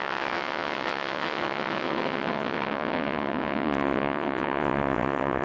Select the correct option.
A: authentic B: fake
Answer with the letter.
B